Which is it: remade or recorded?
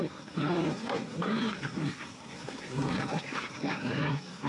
remade